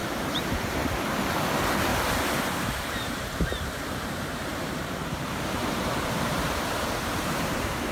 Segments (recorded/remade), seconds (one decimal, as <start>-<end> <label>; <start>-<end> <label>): 0.0-0.9 remade; 0.9-1.9 recorded; 1.9-3.4 remade; 3.4-4.5 recorded; 4.5-7.9 remade